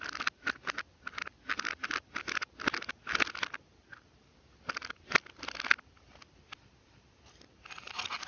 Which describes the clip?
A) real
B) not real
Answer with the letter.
A